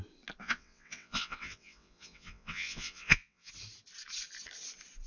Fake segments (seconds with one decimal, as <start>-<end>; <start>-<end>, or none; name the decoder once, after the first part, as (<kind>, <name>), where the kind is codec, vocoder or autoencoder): 0.4-3.5 (vocoder, WaveNeXt)